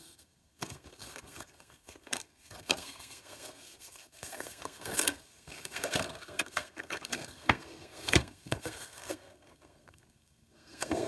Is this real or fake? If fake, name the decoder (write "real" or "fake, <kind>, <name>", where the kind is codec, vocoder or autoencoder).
fake, codec, SNAC